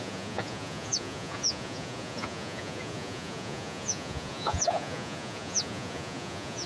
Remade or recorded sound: remade